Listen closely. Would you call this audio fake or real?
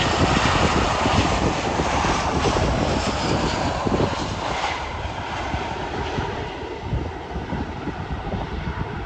fake